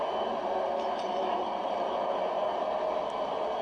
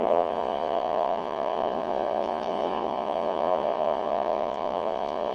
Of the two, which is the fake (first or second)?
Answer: second